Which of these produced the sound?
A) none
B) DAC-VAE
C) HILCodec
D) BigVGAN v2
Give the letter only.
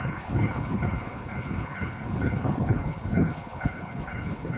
C